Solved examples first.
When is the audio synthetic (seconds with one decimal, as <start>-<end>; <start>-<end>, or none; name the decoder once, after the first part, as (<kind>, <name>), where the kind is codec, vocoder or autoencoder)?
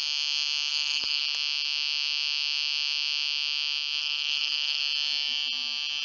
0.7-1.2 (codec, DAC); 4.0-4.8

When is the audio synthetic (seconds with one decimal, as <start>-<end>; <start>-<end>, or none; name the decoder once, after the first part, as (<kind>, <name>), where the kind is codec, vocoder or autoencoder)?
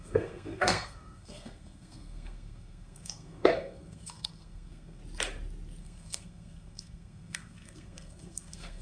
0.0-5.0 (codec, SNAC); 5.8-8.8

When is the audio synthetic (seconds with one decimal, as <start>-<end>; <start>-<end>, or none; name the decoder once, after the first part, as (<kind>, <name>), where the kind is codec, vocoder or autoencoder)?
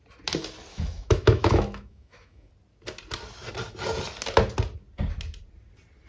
0.7-2.5 (autoencoder, DAC-VAE)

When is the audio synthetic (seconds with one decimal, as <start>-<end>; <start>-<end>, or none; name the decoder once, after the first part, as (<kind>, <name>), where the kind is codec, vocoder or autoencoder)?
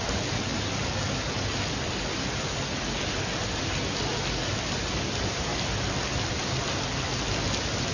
none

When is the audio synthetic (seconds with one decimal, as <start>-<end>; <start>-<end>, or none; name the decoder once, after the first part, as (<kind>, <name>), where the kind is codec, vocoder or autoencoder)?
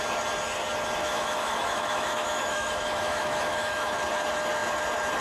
1.0-4.1 (autoencoder, DAC-VAE)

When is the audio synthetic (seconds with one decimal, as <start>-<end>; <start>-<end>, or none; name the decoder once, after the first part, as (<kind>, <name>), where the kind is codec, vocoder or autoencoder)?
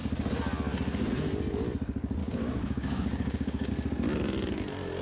2.2-3.7 (codec, DAC)